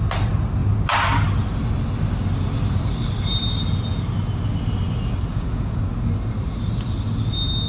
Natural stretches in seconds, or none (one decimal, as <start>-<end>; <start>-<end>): 0.0-5.3; 5.8-7.7